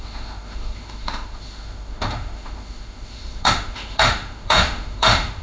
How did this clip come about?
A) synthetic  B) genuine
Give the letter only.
A